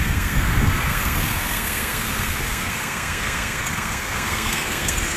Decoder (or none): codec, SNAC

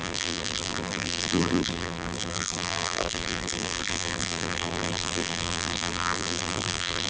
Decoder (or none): vocoder, BigVGAN v2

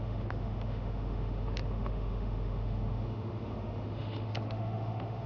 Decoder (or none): autoencoder, DAC-VAE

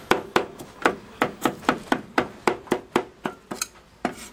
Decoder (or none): vocoder, BigVGAN v2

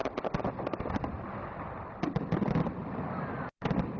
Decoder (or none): none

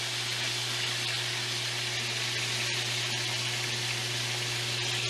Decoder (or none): none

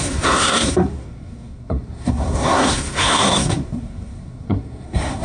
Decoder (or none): codec, SNAC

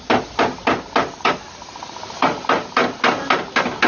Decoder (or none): none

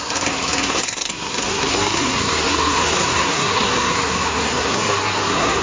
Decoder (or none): codec, SNAC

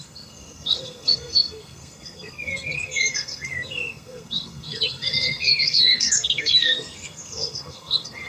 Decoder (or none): codec, SNAC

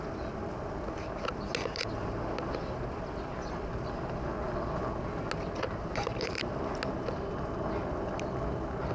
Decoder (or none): none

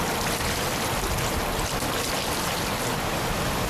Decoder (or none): none